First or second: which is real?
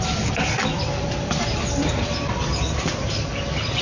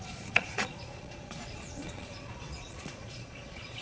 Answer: first